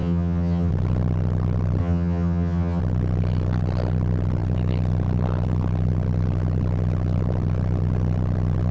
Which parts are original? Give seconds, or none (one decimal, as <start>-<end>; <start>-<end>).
0.7-1.8; 2.8-8.7